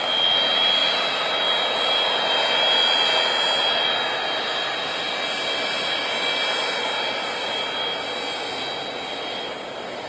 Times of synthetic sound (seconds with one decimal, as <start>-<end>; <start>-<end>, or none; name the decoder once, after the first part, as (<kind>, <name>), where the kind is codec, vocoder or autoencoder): none